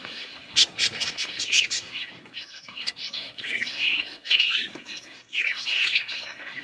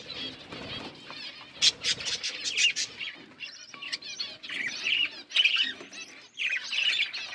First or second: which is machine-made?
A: first